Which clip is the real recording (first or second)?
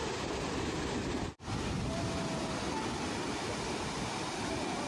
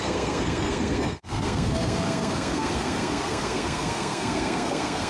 first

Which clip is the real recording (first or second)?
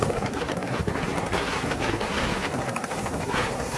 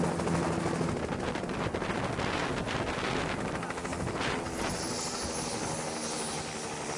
second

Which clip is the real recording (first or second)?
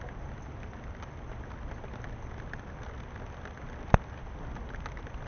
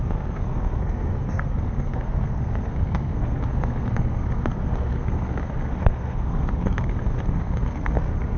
first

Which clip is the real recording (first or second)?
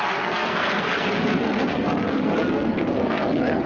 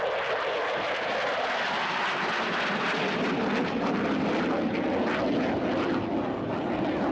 second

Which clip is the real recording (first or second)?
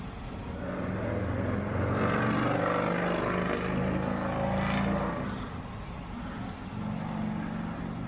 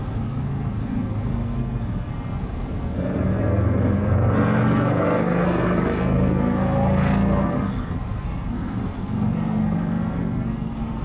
first